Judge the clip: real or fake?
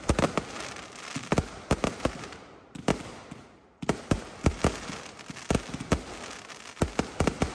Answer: real